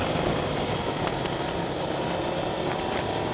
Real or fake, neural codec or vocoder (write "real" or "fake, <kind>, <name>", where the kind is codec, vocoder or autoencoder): real